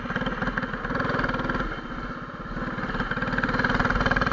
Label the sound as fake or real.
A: real